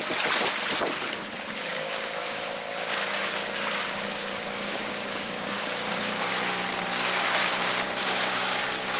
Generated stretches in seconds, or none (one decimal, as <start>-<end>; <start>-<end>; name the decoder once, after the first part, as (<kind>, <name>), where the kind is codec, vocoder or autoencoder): 1.7-6.3 (codec, DAC); 6.7-9.0